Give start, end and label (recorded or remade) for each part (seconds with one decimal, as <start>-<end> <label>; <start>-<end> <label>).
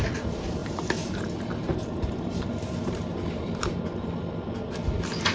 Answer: 0.0-0.6 recorded; 0.6-3.8 remade; 3.8-5.3 recorded